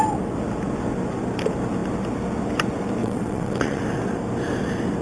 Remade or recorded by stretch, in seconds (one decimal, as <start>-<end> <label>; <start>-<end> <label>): 0.0-3.0 recorded; 3.0-3.8 remade; 3.8-5.0 recorded